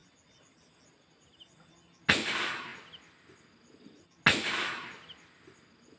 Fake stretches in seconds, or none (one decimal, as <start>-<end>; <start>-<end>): none